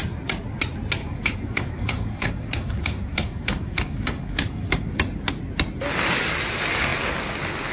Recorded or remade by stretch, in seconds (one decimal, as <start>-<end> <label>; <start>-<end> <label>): 0.0-1.0 recorded; 1.0-5.0 remade; 5.0-7.7 recorded